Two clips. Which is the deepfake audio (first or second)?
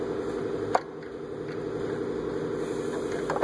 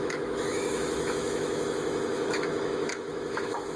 second